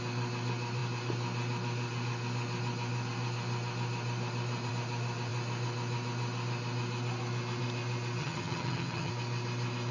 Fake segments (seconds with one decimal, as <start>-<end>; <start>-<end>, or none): 8.2-9.1